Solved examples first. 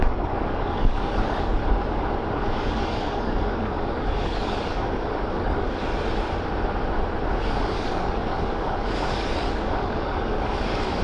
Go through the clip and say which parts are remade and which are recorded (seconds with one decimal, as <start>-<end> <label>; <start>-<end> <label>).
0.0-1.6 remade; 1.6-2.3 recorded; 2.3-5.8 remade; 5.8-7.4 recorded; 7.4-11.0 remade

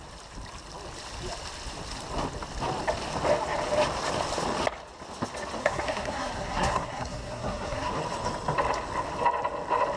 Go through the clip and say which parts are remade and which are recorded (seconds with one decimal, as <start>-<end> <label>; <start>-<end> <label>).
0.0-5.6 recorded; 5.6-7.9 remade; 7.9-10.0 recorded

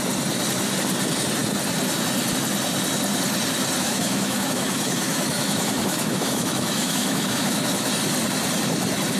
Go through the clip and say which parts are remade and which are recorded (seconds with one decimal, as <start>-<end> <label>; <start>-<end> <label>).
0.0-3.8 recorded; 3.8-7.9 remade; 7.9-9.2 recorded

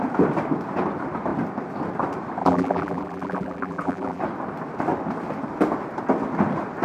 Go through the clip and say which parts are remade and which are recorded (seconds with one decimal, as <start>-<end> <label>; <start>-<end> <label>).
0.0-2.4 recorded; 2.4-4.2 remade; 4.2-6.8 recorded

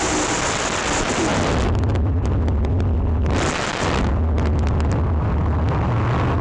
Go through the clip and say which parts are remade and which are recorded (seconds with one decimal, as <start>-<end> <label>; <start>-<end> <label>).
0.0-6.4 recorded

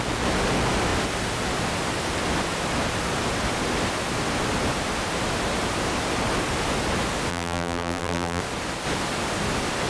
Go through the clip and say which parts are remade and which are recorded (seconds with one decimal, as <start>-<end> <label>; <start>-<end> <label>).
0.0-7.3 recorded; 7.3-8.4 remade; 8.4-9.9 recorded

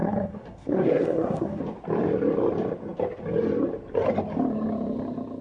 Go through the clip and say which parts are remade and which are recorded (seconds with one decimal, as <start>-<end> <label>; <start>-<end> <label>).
0.0-1.6 remade; 1.6-5.4 recorded

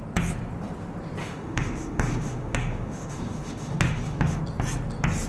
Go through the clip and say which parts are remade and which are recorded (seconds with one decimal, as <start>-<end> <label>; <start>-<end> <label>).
0.0-1.2 recorded; 1.2-4.4 remade; 4.4-5.3 recorded